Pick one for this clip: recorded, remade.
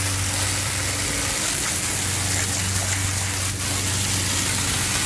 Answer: recorded